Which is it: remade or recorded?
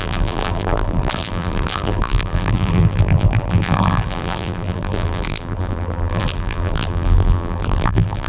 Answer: remade